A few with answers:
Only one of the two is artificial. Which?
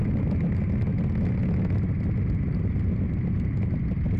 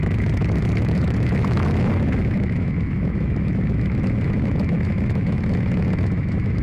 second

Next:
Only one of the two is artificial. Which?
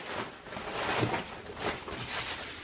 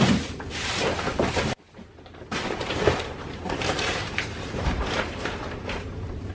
second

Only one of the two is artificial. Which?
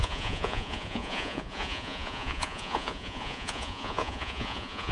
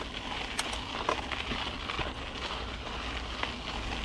first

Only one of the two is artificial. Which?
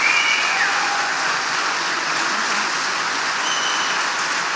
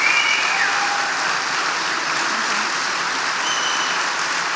first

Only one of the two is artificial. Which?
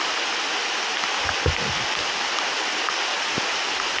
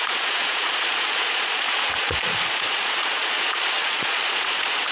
second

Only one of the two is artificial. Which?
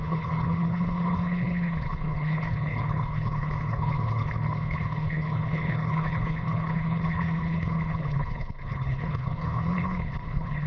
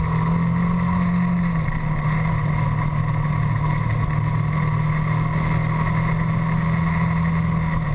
first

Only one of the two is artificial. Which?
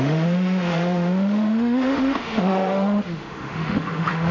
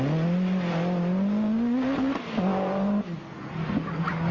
first